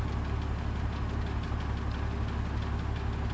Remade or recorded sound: recorded